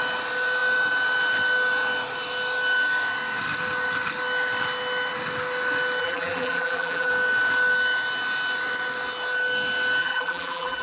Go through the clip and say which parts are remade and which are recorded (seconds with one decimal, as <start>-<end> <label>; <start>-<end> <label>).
0.0-6.0 recorded; 6.0-7.1 remade; 7.1-10.0 recorded; 10.0-10.8 remade